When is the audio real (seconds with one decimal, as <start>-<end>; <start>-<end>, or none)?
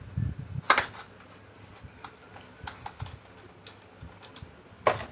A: 0.0-5.1